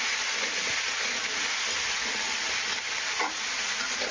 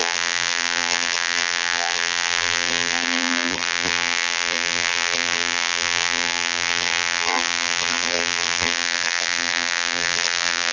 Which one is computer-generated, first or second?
second